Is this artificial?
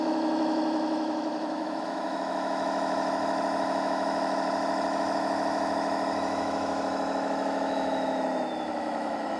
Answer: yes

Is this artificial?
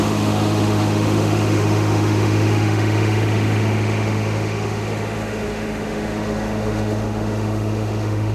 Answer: yes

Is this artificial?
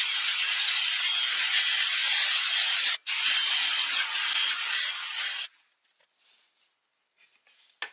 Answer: no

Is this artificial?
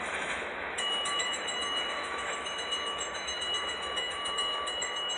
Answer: yes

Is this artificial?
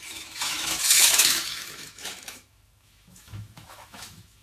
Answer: yes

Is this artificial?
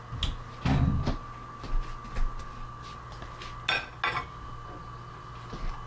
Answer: no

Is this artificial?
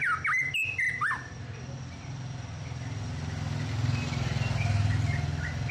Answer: no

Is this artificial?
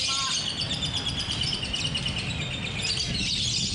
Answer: no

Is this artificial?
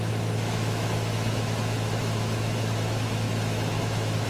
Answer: yes